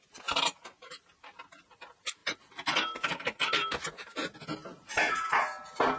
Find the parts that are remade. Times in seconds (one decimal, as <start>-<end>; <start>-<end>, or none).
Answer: none